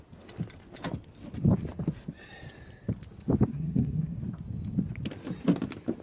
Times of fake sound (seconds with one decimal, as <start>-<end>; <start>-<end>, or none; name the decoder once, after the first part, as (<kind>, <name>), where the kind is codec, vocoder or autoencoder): 3.5-4.2 (codec, SNAC)